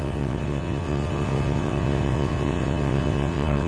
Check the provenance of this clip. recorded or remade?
remade